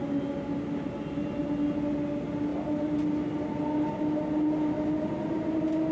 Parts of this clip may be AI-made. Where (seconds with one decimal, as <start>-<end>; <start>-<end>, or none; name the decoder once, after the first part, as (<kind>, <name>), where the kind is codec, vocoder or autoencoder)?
none